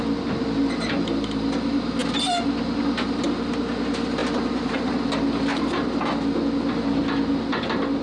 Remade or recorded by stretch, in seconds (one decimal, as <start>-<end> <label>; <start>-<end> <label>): 0.0-8.0 recorded